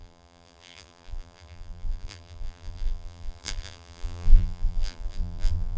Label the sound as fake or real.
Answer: fake